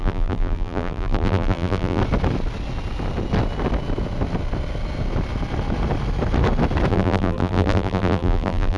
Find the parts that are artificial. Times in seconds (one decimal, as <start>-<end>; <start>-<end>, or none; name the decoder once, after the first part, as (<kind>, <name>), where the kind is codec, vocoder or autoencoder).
0.0-2.0 (vocoder, BigVGAN v2); 6.9-8.8